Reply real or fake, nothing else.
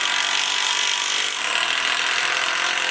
real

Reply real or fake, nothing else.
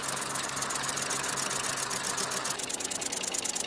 real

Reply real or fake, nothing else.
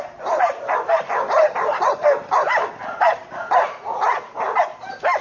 real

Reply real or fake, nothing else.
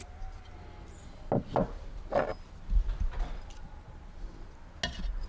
real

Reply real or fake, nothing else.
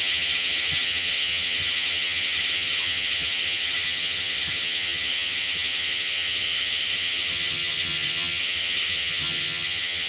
fake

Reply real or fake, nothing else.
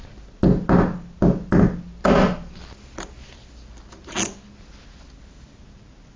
real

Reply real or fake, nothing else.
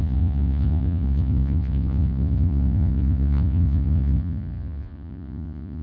fake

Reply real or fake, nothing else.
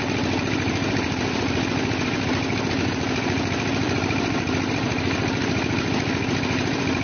fake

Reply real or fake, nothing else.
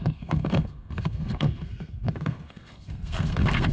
fake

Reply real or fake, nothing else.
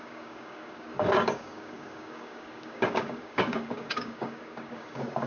fake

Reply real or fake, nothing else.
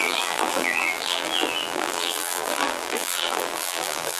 fake